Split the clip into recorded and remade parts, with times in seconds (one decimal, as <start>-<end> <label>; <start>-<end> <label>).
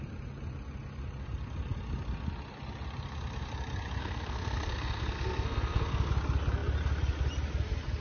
0.0-4.0 recorded; 4.0-6.1 remade; 6.1-8.0 recorded